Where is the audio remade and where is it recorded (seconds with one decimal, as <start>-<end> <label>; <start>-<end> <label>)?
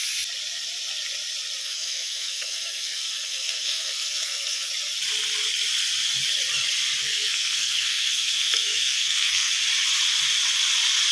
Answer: 0.0-1.6 recorded; 1.6-4.7 remade; 4.7-7.0 recorded; 7.0-9.5 remade; 9.5-11.1 recorded